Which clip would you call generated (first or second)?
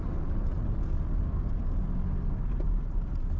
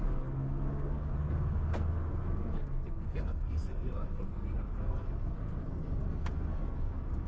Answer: second